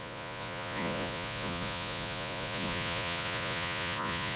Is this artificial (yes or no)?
yes